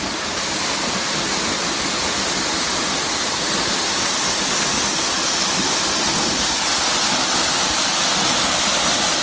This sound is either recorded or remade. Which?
recorded